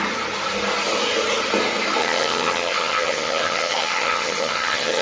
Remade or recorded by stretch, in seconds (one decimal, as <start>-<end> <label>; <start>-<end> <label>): 0.0-2.0 recorded; 2.0-5.0 remade